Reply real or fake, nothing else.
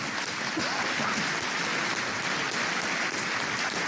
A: real